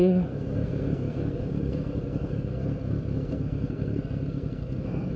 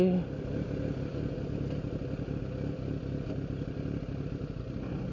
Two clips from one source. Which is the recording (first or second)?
second